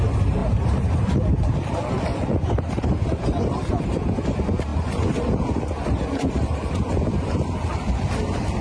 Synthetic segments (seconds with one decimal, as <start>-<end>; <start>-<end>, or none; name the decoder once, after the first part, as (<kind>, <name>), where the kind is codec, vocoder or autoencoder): 0.4-0.9 (vocoder, BigVGAN v2)